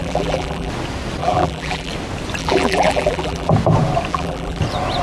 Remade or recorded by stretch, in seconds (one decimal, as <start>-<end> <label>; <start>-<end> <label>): 0.0-0.7 remade; 0.7-1.2 recorded; 1.2-1.9 remade; 1.9-2.4 recorded; 2.4-3.5 remade; 3.5-4.1 recorded; 4.1-4.6 remade; 4.6-5.0 recorded